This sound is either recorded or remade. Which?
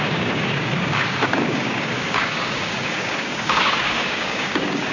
remade